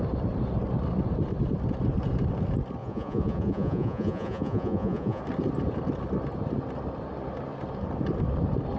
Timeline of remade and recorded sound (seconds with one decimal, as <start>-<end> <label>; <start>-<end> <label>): 0.0-2.8 recorded; 2.8-5.2 remade; 5.2-8.8 recorded